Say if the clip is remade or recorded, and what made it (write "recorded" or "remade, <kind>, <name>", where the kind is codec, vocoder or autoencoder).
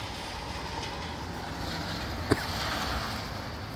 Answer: recorded